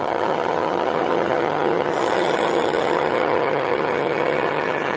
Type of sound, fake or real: fake